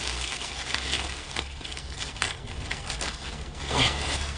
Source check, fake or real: fake